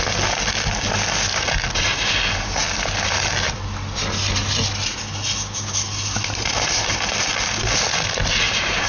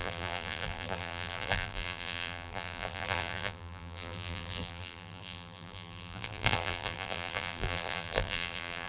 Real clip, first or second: first